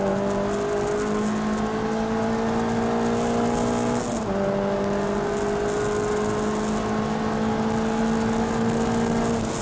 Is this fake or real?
real